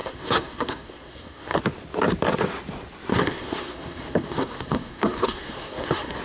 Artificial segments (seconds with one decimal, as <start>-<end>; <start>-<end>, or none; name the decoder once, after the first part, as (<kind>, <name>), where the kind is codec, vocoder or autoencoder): 0.0-1.6 (codec, SNAC); 3.1-6.2